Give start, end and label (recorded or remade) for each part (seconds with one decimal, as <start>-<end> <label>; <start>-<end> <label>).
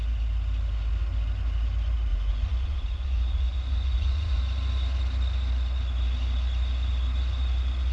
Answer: 0.0-2.1 recorded; 2.1-4.4 remade; 4.4-7.9 recorded